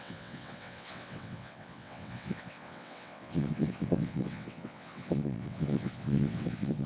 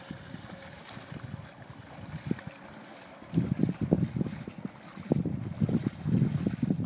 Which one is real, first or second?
second